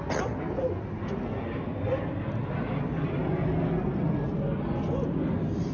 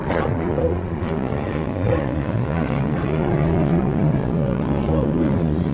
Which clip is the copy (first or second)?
second